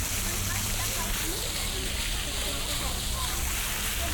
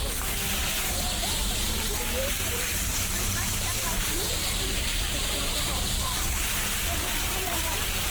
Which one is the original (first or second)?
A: first